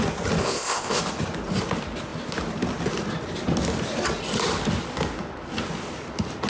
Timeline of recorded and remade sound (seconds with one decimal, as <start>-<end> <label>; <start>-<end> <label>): 0.0-0.4 recorded; 0.4-1.0 remade; 1.0-6.5 recorded